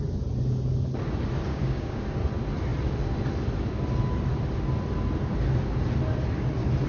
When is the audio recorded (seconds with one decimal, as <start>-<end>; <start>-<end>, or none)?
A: 0.0-1.5; 2.0-6.9